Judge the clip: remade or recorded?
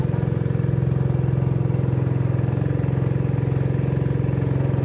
recorded